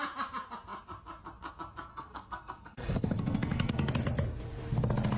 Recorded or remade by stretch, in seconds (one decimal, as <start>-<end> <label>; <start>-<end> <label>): 0.0-1.9 recorded; 1.9-3.9 remade; 3.9-5.2 recorded